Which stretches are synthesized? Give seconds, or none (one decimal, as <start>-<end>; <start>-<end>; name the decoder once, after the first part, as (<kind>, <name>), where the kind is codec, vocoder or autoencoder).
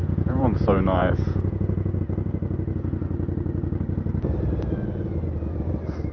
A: 0.0-2.0 (vocoder, Vocos)